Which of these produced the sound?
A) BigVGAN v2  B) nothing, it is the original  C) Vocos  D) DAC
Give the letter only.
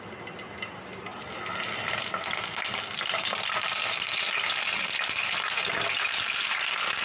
B